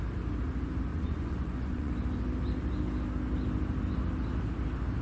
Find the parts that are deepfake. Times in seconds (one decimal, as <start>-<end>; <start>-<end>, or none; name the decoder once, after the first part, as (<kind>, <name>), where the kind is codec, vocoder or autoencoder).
0.9-1.9 (vocoder, Vocos)